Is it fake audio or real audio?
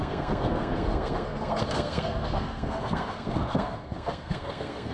fake